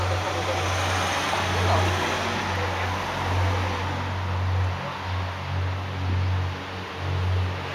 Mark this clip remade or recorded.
recorded